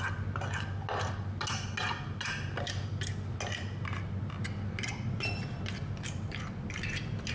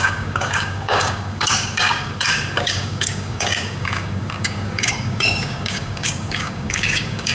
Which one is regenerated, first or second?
second